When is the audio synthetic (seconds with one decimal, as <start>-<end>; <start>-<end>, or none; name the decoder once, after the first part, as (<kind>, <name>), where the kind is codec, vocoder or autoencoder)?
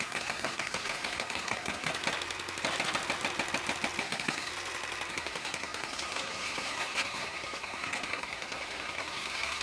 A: 0.0-1.9 (codec, SNAC); 4.0-4.5; 5.1-9.6